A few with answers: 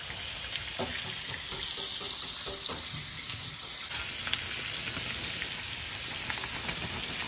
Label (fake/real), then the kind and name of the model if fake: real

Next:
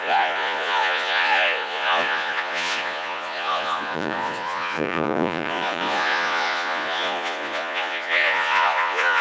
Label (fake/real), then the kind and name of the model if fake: fake, vocoder, Vocos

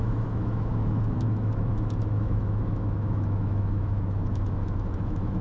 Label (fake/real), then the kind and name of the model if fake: fake, autoencoder, DAC-VAE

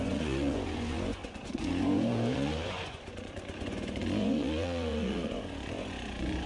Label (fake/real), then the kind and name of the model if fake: fake, vocoder, Vocos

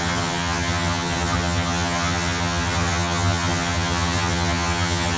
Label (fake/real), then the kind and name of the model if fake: fake, vocoder, HiFi-GAN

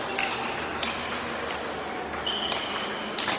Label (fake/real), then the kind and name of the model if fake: real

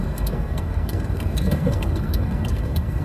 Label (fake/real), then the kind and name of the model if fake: fake, codec, SNAC